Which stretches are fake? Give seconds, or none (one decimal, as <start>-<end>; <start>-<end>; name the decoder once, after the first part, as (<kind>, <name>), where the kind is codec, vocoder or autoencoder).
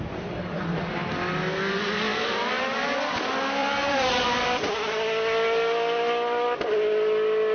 2.1-2.6 (vocoder, BigVGAN v2); 3.6-4.4